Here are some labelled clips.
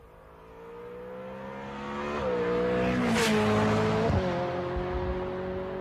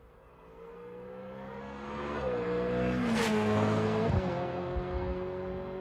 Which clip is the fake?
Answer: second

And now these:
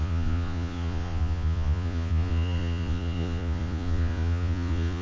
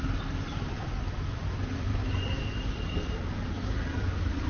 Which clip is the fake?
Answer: first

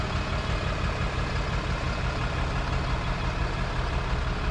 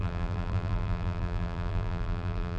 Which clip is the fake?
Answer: second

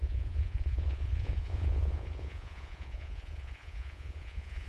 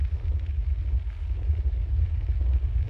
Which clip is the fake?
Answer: first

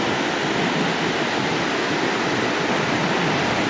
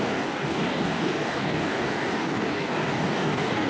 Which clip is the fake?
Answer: second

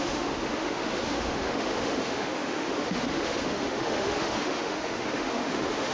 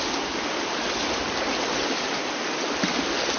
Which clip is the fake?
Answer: first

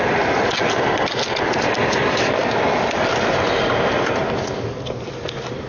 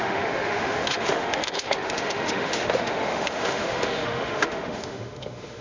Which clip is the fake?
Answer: second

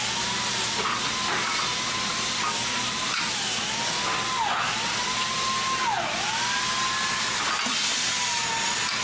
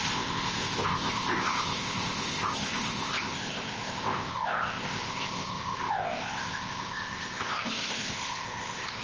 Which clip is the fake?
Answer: second